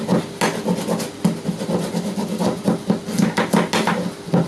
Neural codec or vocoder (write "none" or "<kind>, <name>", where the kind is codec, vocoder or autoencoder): none